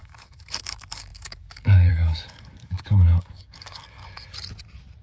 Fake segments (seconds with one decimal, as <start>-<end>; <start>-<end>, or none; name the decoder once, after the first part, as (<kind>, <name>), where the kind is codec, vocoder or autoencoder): 0.0-4.0 (codec, DAC)